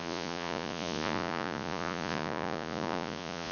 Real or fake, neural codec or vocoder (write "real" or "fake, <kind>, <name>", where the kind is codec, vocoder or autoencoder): fake, vocoder, Vocos